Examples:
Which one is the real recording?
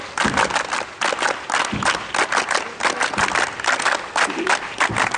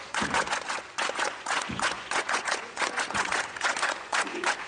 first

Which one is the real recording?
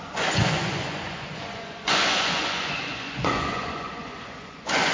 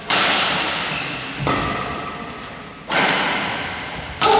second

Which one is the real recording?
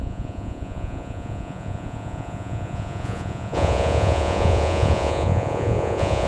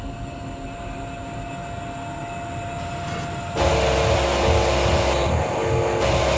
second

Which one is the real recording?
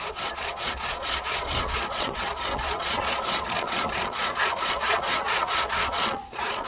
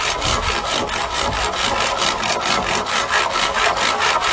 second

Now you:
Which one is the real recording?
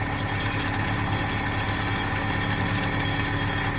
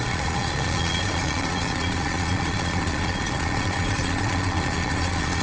first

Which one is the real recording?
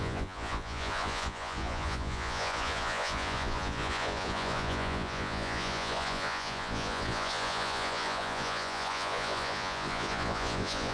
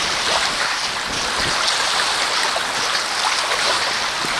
second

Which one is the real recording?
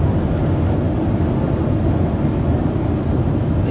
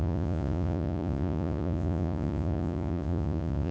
first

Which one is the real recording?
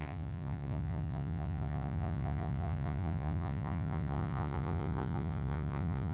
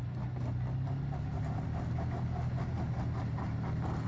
second